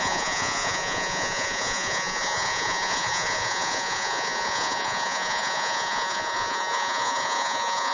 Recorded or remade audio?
remade